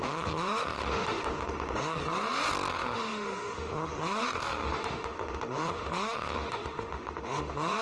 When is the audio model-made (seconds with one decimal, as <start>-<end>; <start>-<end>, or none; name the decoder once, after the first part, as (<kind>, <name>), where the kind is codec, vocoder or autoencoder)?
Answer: 0.0-2.0 (autoencoder, DAC-VAE); 2.7-7.8